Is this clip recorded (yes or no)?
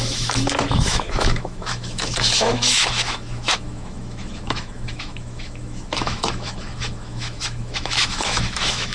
no